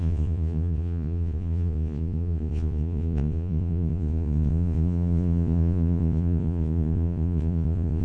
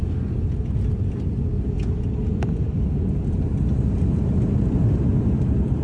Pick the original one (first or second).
second